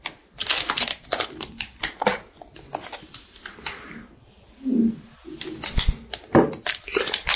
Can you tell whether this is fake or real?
real